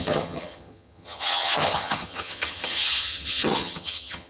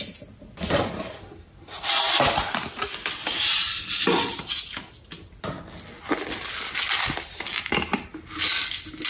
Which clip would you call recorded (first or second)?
second